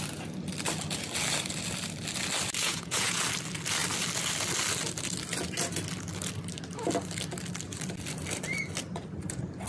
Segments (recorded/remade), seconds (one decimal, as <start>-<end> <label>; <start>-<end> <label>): 0.0-2.6 recorded; 2.6-3.2 remade; 3.2-9.7 recorded